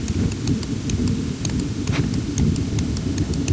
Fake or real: real